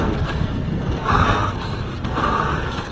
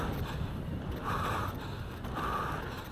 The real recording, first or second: second